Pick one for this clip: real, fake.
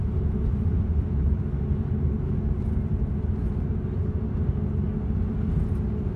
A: real